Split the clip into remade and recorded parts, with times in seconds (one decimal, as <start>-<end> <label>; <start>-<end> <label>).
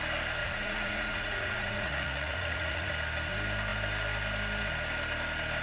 0.0-0.4 recorded; 0.4-2.9 remade; 2.9-5.6 recorded